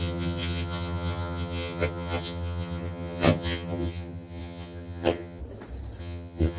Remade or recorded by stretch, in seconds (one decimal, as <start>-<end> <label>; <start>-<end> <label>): 0.0-5.4 remade; 5.4-6.0 recorded; 6.0-6.6 remade